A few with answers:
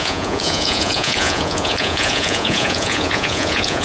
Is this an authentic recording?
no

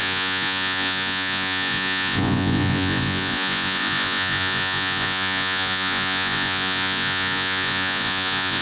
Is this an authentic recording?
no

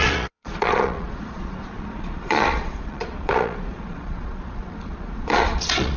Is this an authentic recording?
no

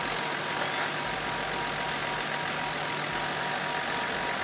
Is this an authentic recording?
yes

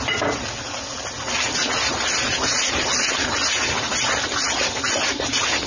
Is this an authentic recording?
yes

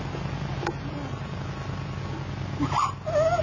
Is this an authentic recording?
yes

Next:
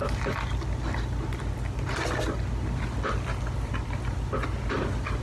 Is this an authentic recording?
yes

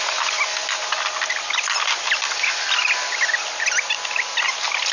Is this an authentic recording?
yes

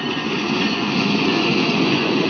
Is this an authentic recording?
no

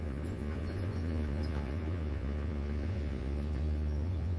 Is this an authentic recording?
no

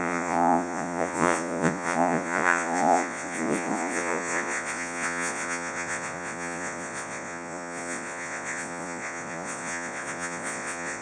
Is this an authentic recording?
no